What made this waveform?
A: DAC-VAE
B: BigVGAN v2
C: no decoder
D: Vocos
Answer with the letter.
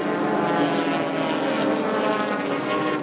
C